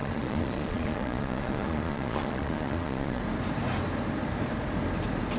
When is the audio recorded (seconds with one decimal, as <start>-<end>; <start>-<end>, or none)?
3.2-5.4